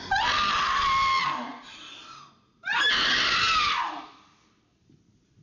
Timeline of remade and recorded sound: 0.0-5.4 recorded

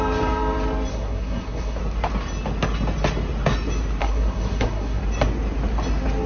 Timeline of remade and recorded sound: 0.0-0.9 recorded; 0.9-1.8 remade; 1.8-4.0 recorded; 4.0-5.0 remade; 5.0-6.3 recorded